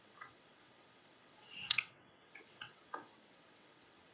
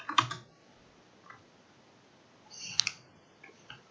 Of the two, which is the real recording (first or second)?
second